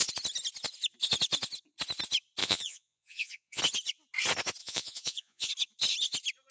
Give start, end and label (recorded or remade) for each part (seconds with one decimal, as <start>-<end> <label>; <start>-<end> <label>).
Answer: 0.0-2.4 recorded; 2.4-3.6 remade; 3.6-4.6 recorded; 4.6-5.5 remade; 5.5-6.5 recorded